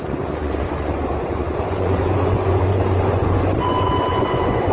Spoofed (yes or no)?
yes